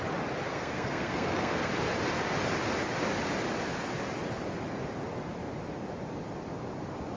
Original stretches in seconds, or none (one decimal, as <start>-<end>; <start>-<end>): 0.0-0.5; 1.7-7.2